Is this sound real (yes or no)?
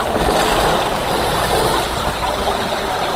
yes